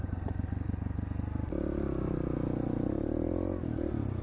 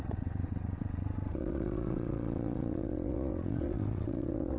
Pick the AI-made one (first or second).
second